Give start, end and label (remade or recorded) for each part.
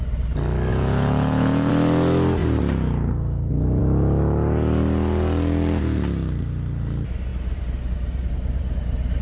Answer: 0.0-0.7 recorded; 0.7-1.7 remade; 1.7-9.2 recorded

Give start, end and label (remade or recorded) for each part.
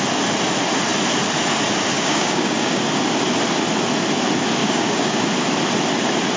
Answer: 0.0-1.9 recorded; 1.9-2.8 remade; 2.8-4.6 recorded; 4.6-5.3 remade; 5.3-6.4 recorded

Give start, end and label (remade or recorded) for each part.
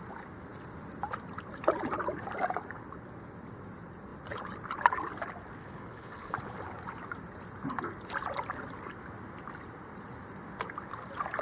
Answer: 0.0-5.6 recorded; 5.6-6.6 remade; 6.6-11.4 recorded